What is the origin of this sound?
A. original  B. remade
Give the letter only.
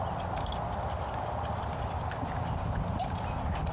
A